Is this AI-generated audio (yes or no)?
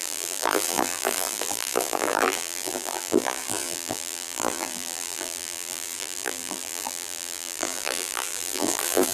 yes